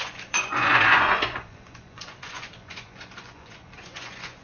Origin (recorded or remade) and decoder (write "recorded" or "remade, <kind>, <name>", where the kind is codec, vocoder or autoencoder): remade, vocoder, Vocos